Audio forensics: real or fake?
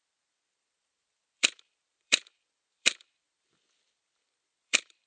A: fake